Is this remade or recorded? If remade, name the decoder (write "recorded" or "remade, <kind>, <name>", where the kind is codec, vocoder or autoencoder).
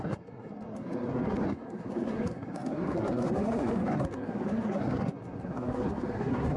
remade, codec, SNAC